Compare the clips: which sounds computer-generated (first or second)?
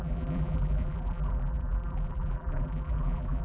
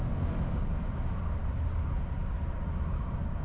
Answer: first